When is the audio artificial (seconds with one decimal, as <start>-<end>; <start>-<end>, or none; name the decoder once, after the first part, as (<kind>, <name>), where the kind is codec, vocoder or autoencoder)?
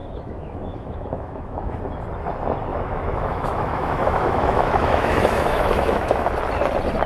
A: 0.0-1.8 (autoencoder, DAC-VAE); 2.7-6.3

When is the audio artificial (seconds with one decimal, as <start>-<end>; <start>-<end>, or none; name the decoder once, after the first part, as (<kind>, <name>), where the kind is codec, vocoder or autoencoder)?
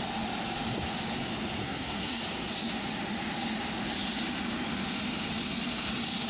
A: 1.6-2.2 (codec, SNAC)